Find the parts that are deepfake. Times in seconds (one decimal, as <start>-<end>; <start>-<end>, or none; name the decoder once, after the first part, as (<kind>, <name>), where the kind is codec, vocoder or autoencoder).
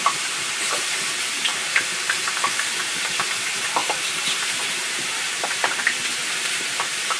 0.0-7.2 (vocoder, BigVGAN v2)